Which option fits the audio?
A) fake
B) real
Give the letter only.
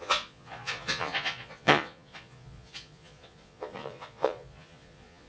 A